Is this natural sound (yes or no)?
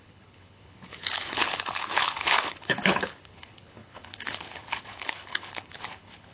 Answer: no